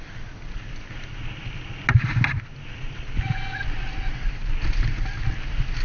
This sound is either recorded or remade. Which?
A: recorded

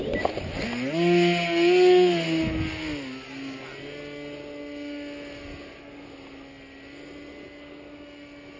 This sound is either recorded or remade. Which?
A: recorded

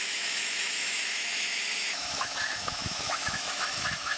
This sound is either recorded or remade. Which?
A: remade